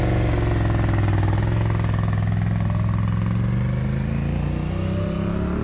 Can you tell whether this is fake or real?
real